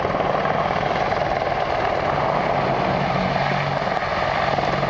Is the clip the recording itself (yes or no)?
yes